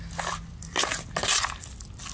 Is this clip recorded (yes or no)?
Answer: yes